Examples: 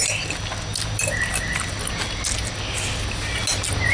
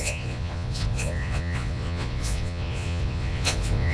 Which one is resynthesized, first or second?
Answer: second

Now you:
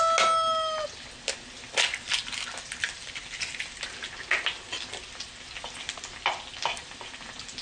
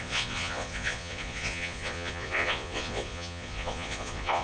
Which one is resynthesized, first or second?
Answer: second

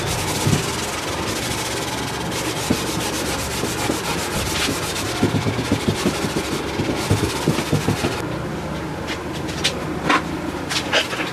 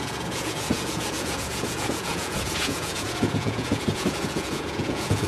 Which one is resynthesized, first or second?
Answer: second